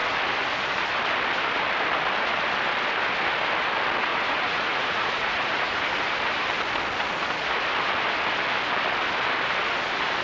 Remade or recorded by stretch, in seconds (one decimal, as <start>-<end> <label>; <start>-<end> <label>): 0.0-4.1 recorded; 4.1-5.9 remade; 5.9-10.2 recorded